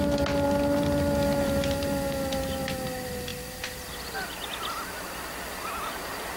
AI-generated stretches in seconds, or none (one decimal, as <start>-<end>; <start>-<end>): none